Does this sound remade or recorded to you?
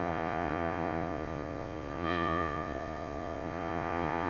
remade